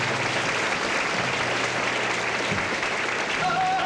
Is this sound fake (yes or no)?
no